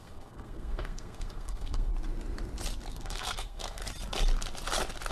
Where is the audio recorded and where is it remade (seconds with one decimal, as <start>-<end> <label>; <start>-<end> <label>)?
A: 0.0-1.9 remade; 1.9-2.9 recorded; 2.9-3.8 remade; 3.8-5.1 recorded